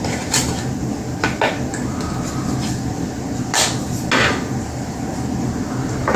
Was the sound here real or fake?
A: real